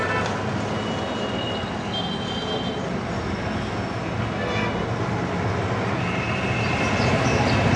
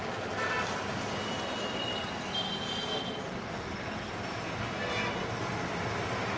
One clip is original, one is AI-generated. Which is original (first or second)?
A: first